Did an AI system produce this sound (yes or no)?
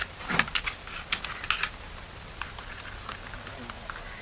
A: no